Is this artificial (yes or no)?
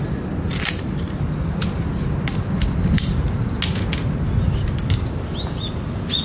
no